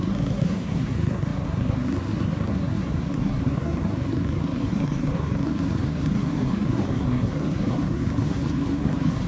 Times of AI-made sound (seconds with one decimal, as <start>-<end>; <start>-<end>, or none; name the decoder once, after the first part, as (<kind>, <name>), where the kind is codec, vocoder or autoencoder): 0.0-9.3 (codec, SNAC)